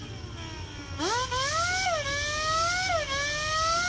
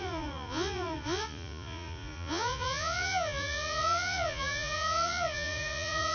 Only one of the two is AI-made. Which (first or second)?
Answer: second